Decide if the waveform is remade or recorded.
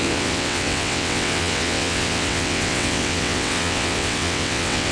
remade